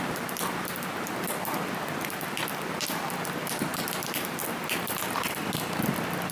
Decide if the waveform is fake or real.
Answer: real